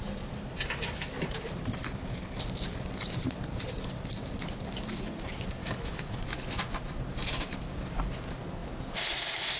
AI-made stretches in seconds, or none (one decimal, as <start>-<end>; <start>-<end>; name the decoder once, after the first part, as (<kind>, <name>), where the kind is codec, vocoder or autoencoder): 5.6-6.2 (autoencoder, DAC-VAE)